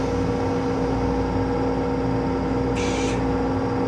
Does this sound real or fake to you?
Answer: real